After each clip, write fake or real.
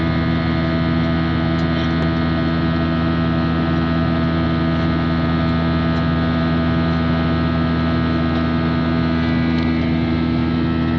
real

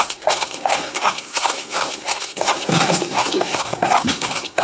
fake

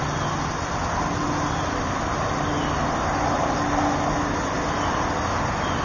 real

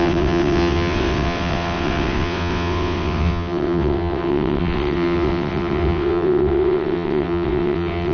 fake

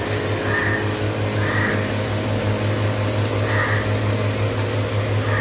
real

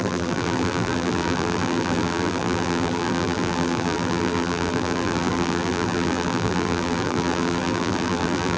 fake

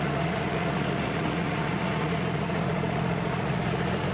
fake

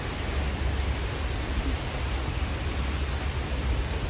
real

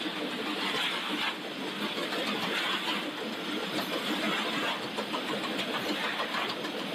real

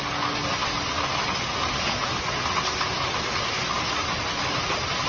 real